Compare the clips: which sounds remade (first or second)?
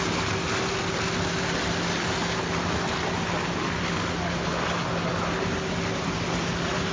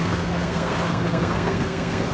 second